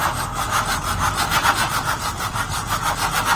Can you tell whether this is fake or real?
real